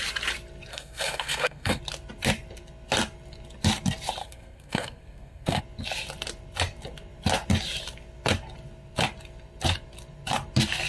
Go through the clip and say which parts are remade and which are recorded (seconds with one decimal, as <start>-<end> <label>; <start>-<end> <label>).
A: 0.0-0.7 recorded; 0.7-1.8 remade; 1.8-4.2 recorded; 4.2-5.6 remade; 5.6-10.9 recorded